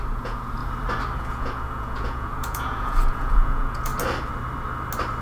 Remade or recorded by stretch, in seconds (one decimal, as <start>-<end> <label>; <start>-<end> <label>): 0.0-0.6 remade; 0.6-1.2 recorded; 1.2-3.9 remade; 3.9-5.2 recorded